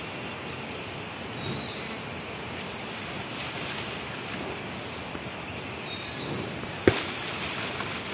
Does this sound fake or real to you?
real